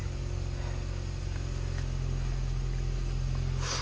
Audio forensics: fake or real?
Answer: real